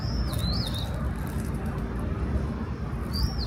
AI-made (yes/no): no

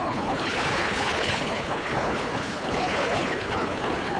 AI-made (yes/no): yes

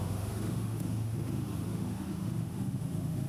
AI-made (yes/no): yes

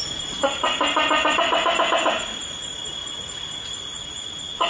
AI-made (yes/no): no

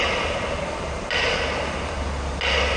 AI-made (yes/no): no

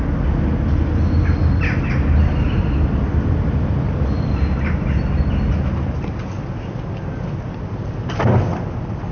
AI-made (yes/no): no